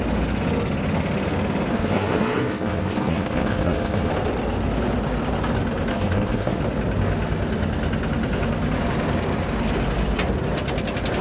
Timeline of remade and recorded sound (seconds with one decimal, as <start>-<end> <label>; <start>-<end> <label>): 0.0-1.7 recorded; 1.7-4.1 remade; 4.1-5.9 recorded; 5.9-6.6 remade; 6.6-11.2 recorded